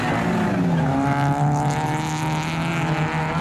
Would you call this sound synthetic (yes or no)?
no